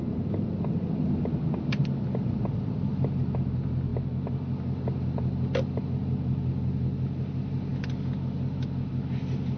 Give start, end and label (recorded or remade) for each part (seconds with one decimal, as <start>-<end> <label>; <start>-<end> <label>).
0.0-9.6 recorded